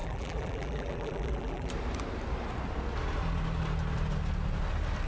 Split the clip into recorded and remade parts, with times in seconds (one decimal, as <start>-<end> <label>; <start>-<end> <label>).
0.0-1.7 remade; 1.7-5.1 recorded